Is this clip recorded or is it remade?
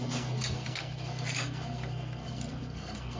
remade